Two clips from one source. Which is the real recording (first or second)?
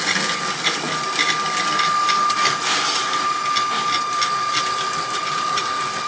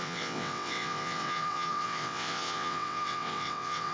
first